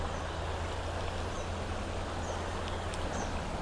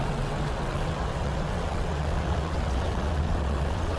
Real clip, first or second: first